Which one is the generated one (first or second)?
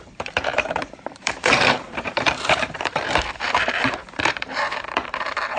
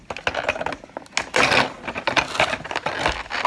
first